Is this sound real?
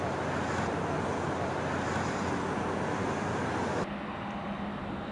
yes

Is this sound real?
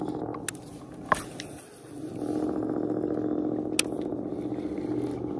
yes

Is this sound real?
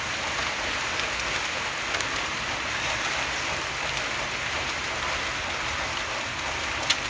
yes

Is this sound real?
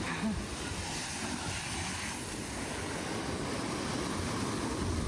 yes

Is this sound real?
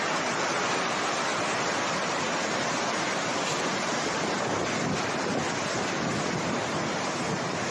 yes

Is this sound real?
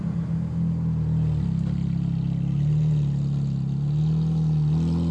yes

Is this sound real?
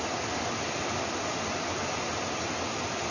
yes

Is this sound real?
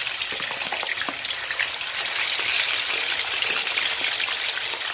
yes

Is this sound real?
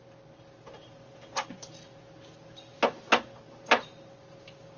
yes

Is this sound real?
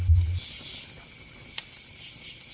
yes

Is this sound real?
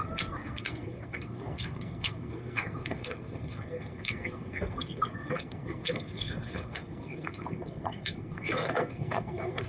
no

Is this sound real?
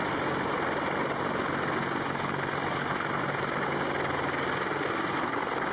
yes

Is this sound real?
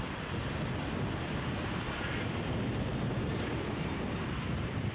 yes